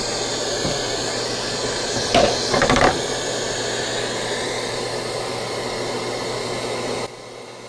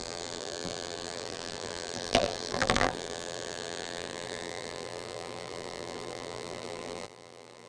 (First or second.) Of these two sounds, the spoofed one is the second